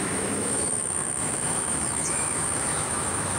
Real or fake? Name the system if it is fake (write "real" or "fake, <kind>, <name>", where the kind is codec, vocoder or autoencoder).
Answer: fake, autoencoder, DAC-VAE